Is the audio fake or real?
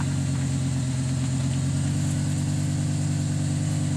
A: real